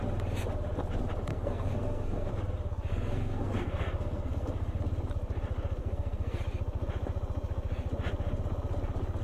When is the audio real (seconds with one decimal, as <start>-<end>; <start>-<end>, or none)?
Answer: 0.0-1.3; 2.3-2.9; 4.8-5.8; 6.4-9.2